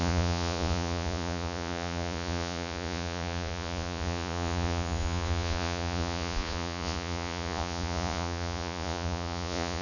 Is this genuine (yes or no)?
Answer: no